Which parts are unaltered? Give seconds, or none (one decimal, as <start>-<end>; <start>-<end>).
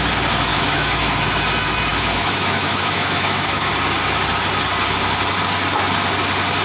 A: 0.0-0.5; 1.4-1.9; 3.7-6.6